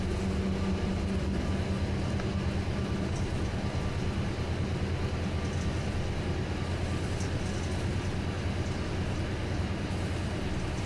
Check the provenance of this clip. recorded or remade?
recorded